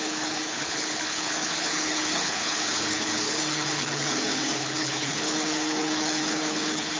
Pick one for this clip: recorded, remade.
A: remade